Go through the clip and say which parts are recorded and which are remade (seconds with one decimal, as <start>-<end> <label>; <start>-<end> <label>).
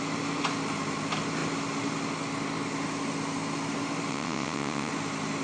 0.0-4.1 recorded; 4.1-4.9 remade; 4.9-5.4 recorded